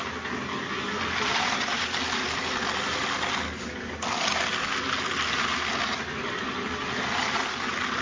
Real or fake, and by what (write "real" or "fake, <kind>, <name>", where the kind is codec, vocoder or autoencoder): real